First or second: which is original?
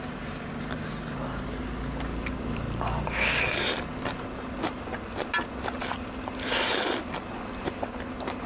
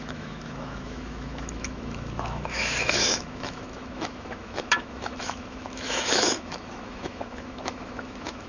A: first